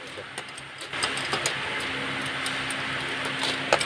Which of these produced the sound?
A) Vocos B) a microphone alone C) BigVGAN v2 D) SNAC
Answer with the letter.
B